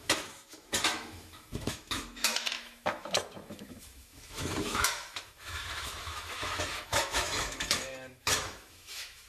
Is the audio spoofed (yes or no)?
yes